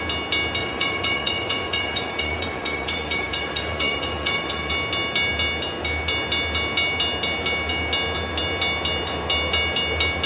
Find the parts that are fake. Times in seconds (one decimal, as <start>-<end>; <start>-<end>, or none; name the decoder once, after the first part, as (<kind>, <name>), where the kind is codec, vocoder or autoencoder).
0.6-4.7 (vocoder, Vocos)